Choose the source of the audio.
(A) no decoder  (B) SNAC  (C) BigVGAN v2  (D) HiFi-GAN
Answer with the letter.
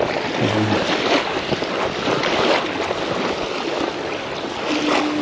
A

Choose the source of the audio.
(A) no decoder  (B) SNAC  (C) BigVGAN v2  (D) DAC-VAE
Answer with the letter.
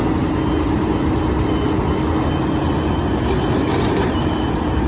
A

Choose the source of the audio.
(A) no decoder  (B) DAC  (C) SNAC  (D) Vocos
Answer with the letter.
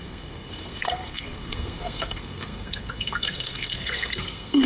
C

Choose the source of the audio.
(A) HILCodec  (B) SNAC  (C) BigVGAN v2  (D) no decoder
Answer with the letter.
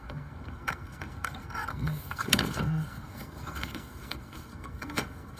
B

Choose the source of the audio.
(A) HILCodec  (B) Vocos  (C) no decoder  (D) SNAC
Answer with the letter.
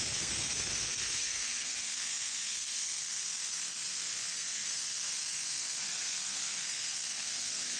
D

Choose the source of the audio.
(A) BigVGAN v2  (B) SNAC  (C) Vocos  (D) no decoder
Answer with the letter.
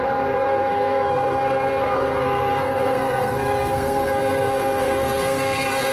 B